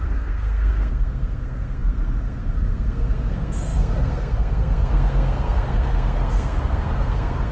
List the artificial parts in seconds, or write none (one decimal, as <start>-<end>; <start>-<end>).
0.0-7.5